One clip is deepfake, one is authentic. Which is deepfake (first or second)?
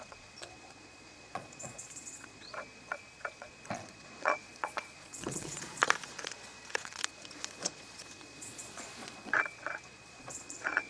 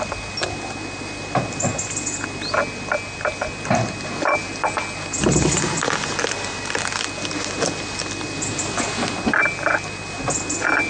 first